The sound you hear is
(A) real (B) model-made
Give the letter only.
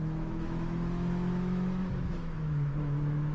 B